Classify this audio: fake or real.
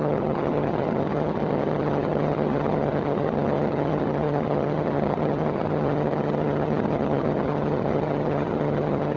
fake